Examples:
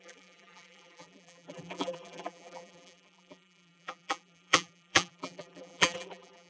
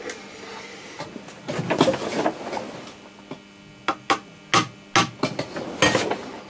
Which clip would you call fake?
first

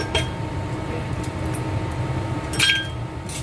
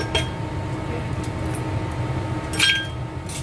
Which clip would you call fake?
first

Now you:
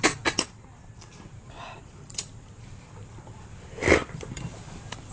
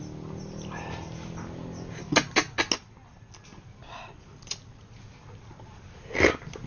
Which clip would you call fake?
first